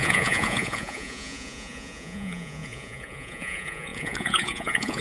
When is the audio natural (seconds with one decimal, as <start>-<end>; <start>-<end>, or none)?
none

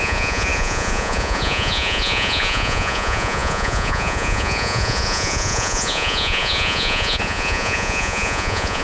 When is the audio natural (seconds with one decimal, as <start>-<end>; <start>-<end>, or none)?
none